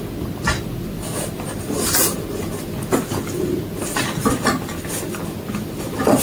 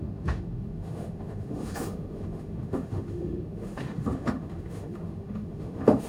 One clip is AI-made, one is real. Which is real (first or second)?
first